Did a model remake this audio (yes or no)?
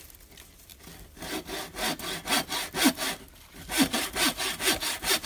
no